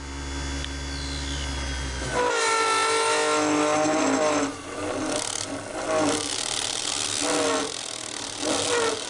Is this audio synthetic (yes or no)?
no